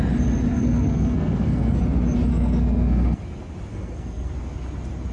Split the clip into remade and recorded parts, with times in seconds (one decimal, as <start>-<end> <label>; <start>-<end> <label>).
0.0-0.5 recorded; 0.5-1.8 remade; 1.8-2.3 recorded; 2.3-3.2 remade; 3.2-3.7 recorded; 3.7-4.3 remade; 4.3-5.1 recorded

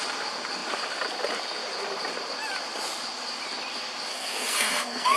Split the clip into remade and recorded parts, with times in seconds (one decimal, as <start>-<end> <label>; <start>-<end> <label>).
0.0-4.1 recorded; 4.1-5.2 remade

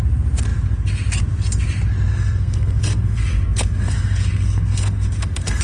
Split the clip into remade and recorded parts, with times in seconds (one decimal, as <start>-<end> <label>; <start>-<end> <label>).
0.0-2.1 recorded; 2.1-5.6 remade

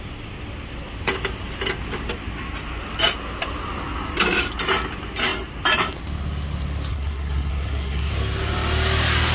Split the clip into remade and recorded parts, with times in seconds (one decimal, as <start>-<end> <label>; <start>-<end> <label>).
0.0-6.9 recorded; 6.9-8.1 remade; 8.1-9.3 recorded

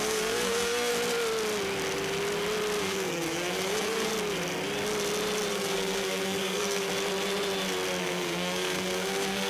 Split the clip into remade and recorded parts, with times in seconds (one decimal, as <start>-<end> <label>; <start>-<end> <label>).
0.0-0.9 remade; 0.9-2.8 recorded; 2.8-4.1 remade; 4.1-5.5 recorded; 5.5-6.9 remade; 6.9-8.0 recorded; 8.0-9.5 remade

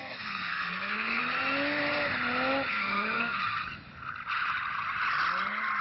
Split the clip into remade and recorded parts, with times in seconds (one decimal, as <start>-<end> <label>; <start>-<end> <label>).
0.0-1.2 remade; 1.2-2.7 recorded; 2.7-3.4 remade; 3.4-5.8 recorded